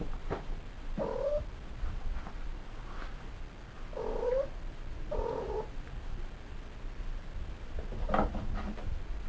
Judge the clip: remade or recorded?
recorded